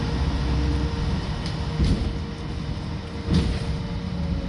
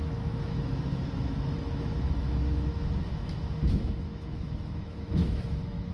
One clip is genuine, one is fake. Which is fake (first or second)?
second